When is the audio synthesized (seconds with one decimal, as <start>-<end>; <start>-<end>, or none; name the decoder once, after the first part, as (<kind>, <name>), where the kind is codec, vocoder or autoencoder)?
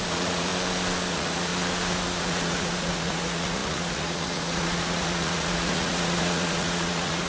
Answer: 0.0-0.5 (vocoder, Vocos); 1.1-1.5; 2.2-7.3